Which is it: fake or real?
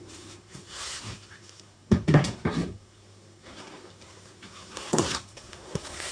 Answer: fake